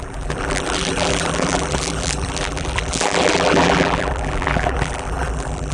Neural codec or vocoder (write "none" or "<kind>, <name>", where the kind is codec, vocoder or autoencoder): vocoder, BigVGAN v2